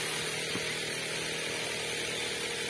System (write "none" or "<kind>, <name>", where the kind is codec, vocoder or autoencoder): none